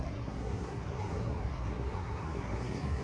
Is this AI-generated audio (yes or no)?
yes